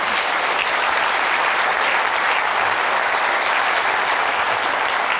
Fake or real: real